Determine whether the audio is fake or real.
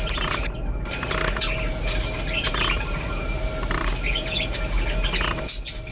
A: real